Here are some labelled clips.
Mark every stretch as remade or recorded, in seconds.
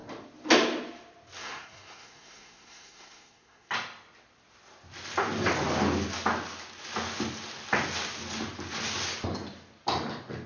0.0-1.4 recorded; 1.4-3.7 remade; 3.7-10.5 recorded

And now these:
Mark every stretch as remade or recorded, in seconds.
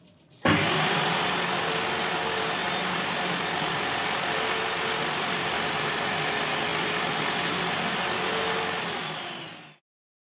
0.0-10.2 recorded